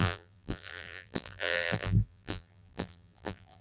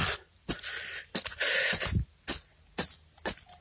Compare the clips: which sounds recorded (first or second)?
second